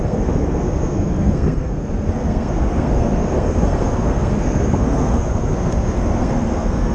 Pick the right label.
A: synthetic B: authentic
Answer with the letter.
A